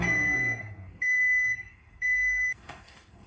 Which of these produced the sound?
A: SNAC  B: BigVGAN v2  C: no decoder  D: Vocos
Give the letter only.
A